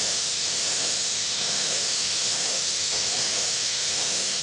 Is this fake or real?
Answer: fake